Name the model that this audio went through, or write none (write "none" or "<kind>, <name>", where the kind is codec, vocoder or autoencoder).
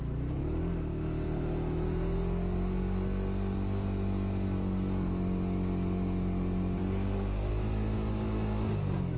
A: none